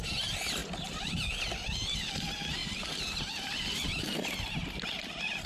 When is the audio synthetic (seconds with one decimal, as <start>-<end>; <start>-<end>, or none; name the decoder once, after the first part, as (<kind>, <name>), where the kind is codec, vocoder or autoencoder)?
2.6-4.8 (vocoder, BigVGAN v2)